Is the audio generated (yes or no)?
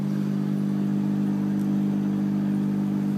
no